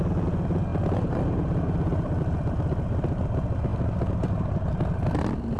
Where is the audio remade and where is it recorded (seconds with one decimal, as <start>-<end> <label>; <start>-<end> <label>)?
0.0-5.6 recorded